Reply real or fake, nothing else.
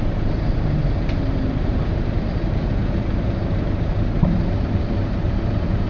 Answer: fake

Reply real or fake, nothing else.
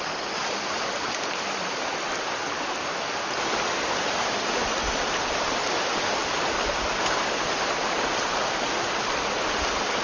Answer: fake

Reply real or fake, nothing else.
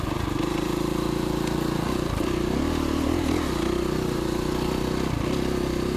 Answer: real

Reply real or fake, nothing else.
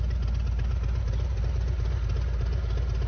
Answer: real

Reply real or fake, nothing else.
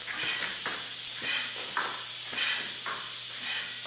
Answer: real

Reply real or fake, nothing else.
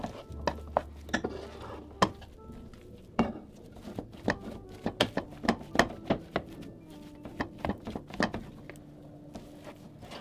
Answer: real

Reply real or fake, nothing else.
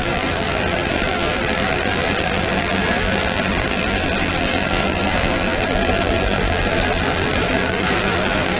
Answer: fake